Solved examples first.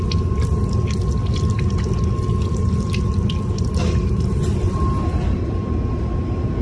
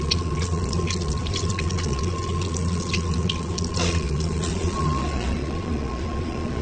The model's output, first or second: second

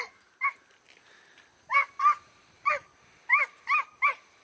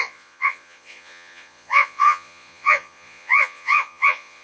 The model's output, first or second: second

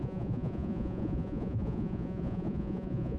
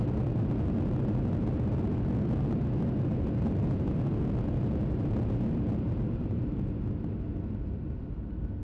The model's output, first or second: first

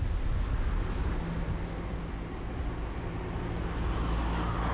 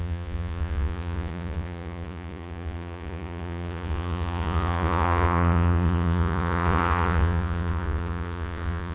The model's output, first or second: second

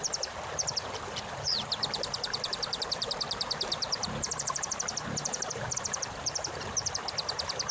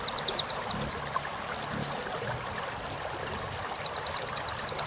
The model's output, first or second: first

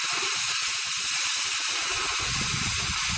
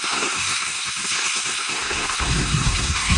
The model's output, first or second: second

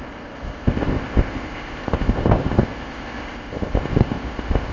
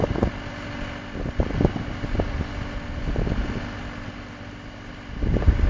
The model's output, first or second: first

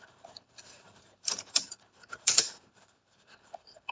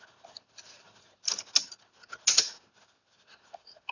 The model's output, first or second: first